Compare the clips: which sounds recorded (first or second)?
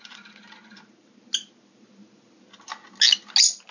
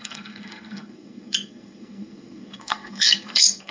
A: first